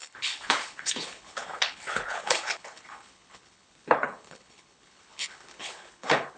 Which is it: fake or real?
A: fake